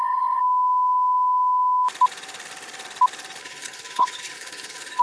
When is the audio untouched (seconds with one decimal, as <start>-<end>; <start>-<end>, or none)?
0.4-3.4